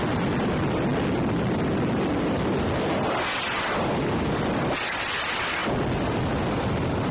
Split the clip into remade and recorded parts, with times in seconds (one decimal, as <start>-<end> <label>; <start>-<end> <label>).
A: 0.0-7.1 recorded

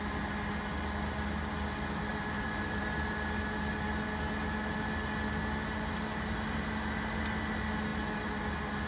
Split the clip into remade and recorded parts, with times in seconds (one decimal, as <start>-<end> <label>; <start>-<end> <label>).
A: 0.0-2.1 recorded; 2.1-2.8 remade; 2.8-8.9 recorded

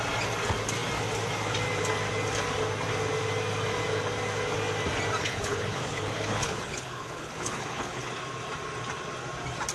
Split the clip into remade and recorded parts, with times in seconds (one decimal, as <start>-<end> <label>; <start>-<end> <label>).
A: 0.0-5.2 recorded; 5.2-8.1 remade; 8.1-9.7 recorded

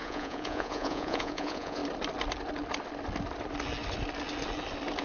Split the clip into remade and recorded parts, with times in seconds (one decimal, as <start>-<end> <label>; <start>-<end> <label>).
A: 0.0-1.8 remade; 1.8-5.0 recorded

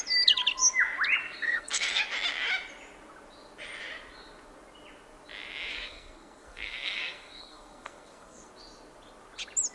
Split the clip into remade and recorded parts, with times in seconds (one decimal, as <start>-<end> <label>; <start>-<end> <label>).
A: 0.0-1.2 recorded; 1.2-2.0 remade; 2.0-5.7 recorded; 5.7-8.5 remade; 8.5-9.7 recorded